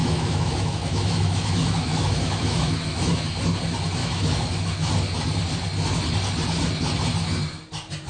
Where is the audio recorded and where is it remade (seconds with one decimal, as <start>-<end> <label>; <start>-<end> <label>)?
0.0-3.4 remade; 3.4-4.0 recorded; 4.0-4.9 remade; 4.9-8.1 recorded